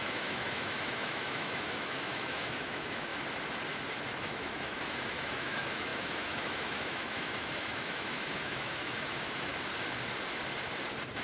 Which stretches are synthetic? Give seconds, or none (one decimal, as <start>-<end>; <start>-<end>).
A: 0.0-3.1; 4.2-9.5